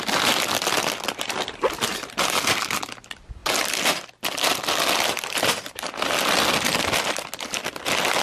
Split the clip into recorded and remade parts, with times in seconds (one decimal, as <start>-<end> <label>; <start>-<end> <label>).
0.0-8.2 recorded